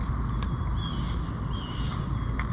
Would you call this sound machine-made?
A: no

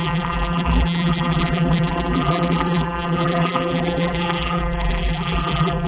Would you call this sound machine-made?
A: yes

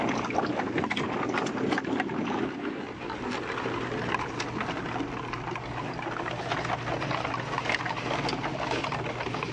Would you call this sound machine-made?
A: no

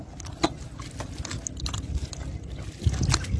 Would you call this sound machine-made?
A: no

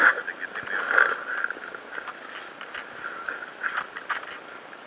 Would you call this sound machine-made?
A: no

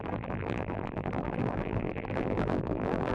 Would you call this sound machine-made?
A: yes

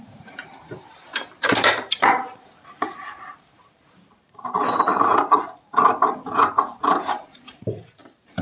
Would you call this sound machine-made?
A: yes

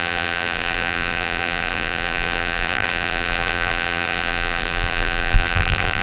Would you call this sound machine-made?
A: yes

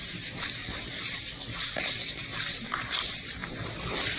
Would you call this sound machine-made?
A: yes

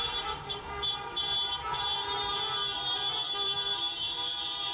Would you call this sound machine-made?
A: yes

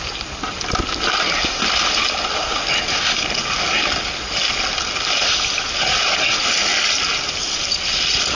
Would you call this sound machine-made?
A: no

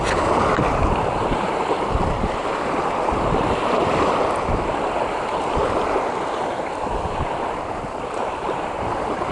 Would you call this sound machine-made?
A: yes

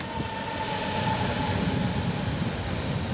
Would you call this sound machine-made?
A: no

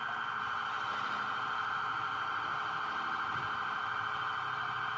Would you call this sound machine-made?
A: no